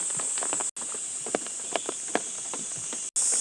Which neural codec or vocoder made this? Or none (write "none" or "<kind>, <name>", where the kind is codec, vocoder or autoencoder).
none